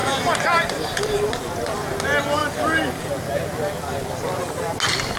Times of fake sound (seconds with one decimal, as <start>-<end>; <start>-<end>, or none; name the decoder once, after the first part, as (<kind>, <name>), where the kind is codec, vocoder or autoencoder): 0.0-1.3 (vocoder, BigVGAN v2); 2.4-3.1